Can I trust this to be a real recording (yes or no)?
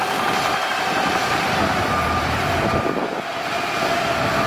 no